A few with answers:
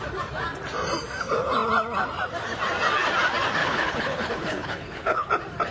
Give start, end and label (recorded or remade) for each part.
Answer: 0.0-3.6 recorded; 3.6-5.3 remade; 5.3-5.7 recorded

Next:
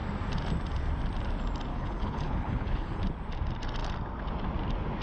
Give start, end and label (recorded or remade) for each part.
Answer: 0.0-1.7 recorded; 1.7-3.0 remade; 3.0-5.0 recorded

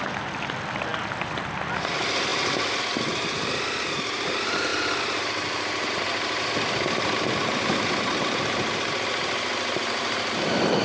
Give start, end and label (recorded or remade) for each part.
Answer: 0.0-10.8 recorded

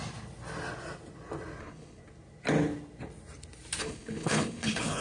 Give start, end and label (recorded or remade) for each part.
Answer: 0.0-1.6 recorded; 1.6-2.0 remade; 2.0-3.8 recorded; 3.8-5.0 remade

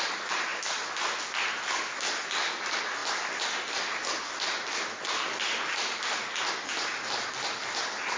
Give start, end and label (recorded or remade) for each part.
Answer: 0.0-8.2 recorded

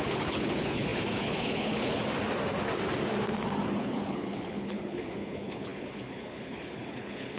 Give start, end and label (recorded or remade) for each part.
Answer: 0.0-2.0 remade; 2.0-3.8 recorded; 3.8-7.4 remade